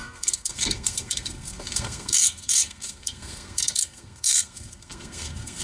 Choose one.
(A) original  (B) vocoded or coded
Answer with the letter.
B